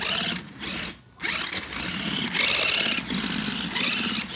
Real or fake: real